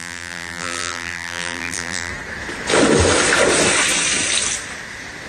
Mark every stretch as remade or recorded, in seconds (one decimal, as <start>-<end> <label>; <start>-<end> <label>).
0.0-2.1 remade; 2.1-5.3 recorded